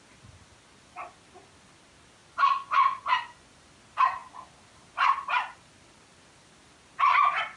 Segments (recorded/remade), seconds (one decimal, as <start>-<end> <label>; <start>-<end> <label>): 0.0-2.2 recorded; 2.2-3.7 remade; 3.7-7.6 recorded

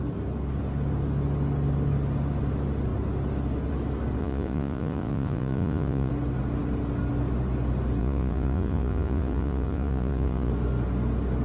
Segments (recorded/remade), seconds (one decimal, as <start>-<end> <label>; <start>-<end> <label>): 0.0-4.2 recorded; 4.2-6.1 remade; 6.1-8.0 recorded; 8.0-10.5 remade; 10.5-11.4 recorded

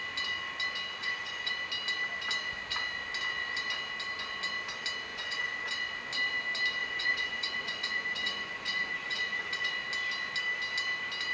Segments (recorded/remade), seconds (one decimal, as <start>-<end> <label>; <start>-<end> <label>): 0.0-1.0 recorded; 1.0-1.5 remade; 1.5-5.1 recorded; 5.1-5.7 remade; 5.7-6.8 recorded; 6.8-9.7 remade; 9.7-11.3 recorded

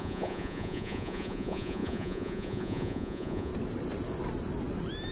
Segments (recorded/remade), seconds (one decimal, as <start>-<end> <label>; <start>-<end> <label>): 0.0-3.5 remade; 3.5-5.1 recorded

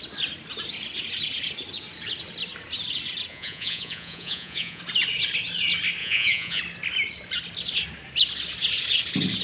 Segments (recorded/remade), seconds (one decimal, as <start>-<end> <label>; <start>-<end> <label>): 0.0-3.3 recorded; 3.3-4.8 remade; 4.8-6.0 recorded; 6.0-6.6 remade; 6.6-9.4 recorded

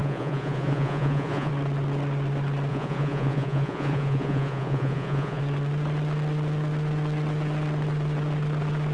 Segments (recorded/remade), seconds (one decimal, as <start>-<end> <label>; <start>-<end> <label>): 0.0-1.5 remade; 1.5-2.7 recorded; 2.7-5.4 remade; 5.4-8.9 recorded